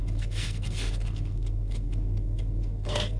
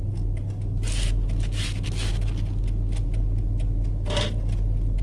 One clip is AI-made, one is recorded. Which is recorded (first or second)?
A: second